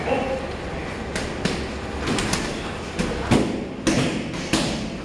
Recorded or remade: recorded